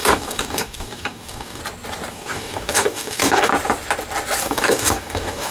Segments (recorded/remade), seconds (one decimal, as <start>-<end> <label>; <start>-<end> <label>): 0.0-1.6 remade; 1.6-2.1 recorded; 2.1-3.5 remade; 3.5-4.4 recorded; 4.4-5.5 remade